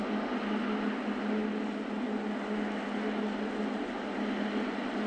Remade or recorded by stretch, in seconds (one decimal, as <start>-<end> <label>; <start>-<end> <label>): 0.0-5.1 recorded